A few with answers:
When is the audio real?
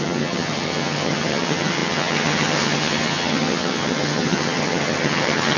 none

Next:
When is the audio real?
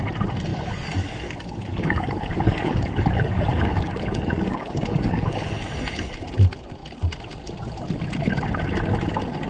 0.0-0.5; 5.5-9.5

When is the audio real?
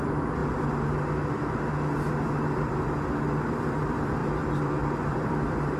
0.4-3.4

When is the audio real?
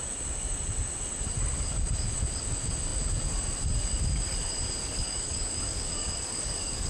0.0-4.8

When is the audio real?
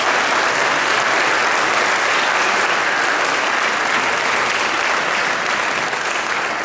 0.0-6.6